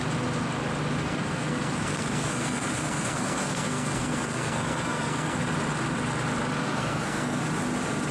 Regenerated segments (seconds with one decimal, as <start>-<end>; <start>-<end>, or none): 1.0-5.4; 6.6-7.4